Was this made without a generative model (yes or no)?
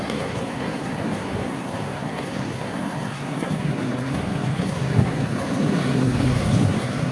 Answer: no